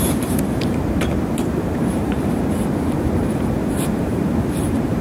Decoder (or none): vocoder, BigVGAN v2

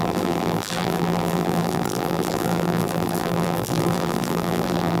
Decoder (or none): vocoder, BigVGAN v2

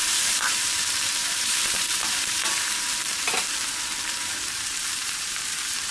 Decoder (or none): vocoder, BigVGAN v2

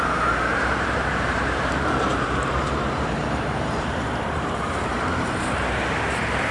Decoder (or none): vocoder, BigVGAN v2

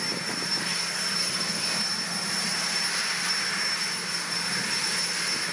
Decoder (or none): none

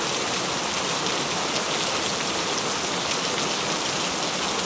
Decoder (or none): none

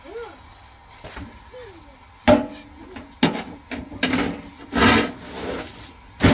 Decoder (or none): none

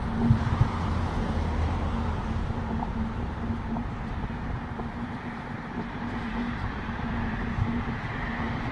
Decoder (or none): vocoder, BigVGAN v2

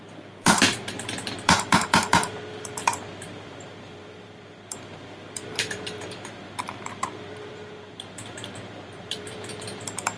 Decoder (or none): vocoder, BigVGAN v2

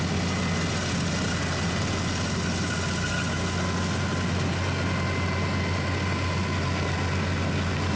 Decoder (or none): none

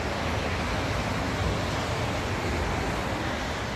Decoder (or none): none